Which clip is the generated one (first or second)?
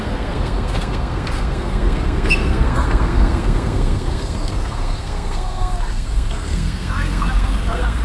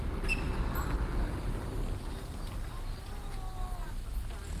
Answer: first